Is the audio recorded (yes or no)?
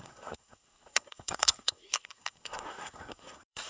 no